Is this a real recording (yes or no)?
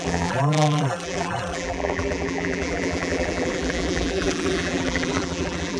no